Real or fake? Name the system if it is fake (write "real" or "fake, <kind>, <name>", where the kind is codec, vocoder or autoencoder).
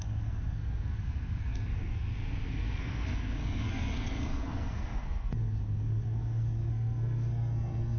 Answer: fake, codec, SNAC